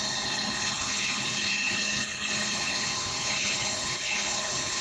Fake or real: fake